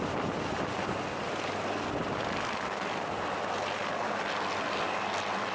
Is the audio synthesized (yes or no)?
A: no